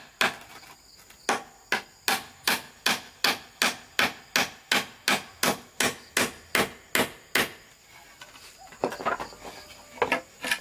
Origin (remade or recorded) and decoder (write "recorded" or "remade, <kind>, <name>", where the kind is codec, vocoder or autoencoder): recorded